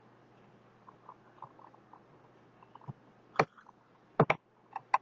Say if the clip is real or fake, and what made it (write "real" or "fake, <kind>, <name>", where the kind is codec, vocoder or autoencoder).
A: real